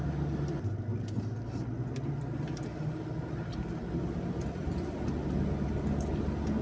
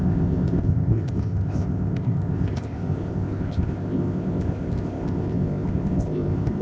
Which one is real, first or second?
first